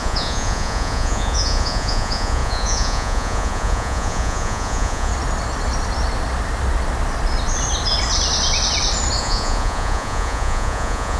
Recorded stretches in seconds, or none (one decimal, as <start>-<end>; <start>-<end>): 5.1-9.2